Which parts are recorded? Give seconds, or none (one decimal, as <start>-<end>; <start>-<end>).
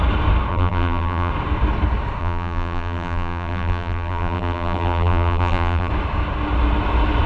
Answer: 0.0-0.5; 1.3-2.2; 5.9-7.3